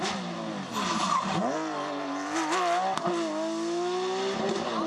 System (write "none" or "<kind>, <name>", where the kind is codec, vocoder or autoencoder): none